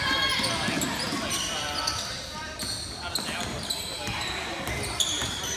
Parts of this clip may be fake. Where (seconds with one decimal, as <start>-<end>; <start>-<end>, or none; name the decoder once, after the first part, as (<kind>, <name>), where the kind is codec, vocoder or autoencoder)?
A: none

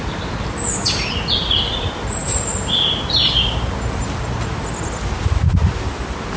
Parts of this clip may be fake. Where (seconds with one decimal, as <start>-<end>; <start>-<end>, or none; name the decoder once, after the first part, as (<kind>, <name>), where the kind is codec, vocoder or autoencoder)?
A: none

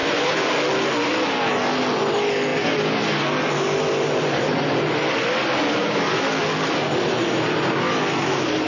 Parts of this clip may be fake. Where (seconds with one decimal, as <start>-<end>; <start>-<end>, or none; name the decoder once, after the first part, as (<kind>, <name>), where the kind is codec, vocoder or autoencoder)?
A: 0.0-0.5 (vocoder, Vocos)

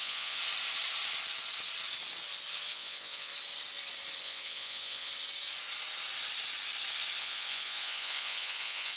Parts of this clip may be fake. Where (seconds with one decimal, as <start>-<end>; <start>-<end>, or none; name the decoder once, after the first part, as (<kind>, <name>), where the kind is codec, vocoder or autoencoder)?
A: 0.0-0.4 (vocoder, Vocos); 2.7-3.3; 4.2-5.1; 7.2-9.0